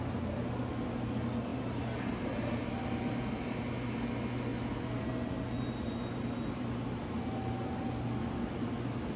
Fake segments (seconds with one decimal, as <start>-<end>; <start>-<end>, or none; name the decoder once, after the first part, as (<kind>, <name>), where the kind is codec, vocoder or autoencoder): 1.5-3.6 (vocoder, BigVGAN v2)